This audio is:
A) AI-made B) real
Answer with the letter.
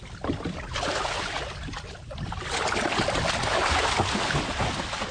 B